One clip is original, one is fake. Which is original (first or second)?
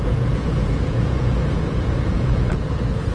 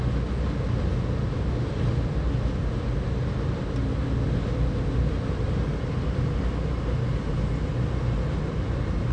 second